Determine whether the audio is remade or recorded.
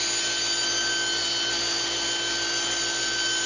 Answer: recorded